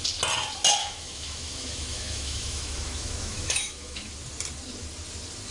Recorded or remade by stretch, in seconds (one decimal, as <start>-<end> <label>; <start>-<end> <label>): 0.0-0.8 recorded; 0.8-4.1 remade; 4.1-5.5 recorded